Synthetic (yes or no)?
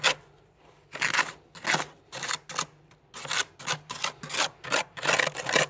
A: no